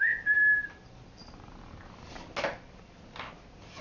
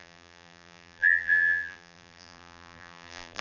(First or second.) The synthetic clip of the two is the second